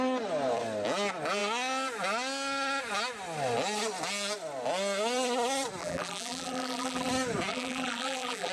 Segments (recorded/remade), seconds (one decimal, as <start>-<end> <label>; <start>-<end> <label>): 0.0-5.8 recorded; 5.8-7.1 remade; 7.1-7.5 recorded; 7.5-8.5 remade